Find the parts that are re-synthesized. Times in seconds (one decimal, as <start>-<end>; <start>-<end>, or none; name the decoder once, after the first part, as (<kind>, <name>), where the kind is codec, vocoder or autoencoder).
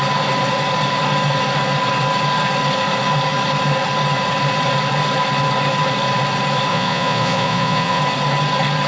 6.7-8.0 (vocoder, Vocos)